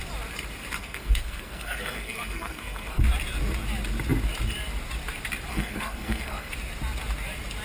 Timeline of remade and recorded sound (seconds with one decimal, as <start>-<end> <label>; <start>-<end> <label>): 0.0-0.8 recorded; 0.8-3.0 remade; 3.0-5.5 recorded; 5.5-6.5 remade; 6.5-7.6 recorded